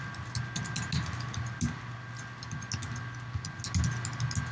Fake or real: real